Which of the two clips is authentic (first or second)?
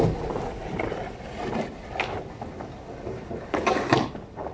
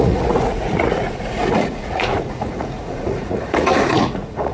first